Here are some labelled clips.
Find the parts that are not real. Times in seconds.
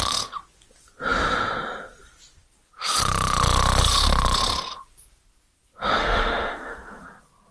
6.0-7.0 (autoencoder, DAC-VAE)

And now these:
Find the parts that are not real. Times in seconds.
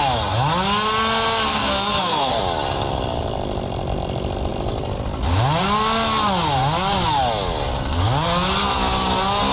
1.5-2.4 (codec, SNAC)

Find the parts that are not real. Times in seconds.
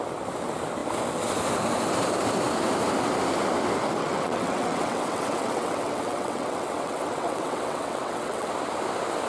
4.0-8.5 (vocoder, WaveNeXt)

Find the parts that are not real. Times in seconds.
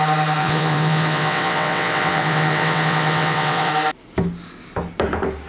0.4-3.7 (vocoder, WaveNeXt)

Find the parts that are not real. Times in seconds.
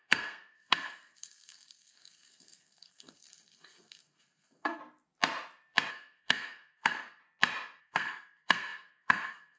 0.0-4.8 (codec, SNAC); 5.9-7.2; 7.8-9.6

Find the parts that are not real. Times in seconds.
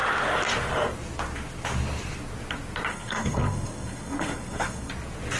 2.9-4.9 (codec, SNAC)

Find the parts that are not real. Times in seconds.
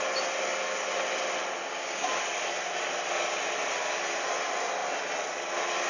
1.6-2.2 (codec, DAC)